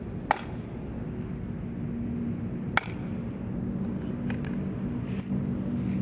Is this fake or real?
real